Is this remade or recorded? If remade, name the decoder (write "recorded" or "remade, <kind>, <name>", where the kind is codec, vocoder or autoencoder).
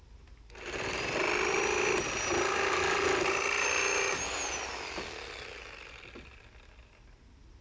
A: recorded